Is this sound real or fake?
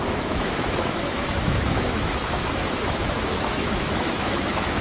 fake